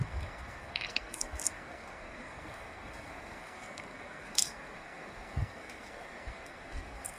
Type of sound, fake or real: fake